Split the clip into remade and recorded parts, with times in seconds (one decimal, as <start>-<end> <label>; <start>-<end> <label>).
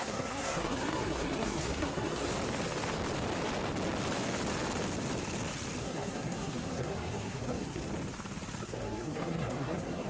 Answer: 0.0-2.3 remade; 2.3-5.8 recorded; 5.8-7.8 remade; 7.8-8.6 recorded; 8.6-10.1 remade